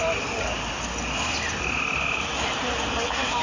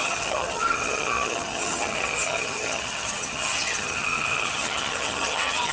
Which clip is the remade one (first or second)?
second